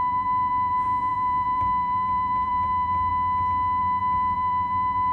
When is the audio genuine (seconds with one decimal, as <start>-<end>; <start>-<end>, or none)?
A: 3.1-3.8